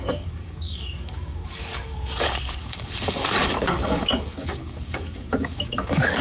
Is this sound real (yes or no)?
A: no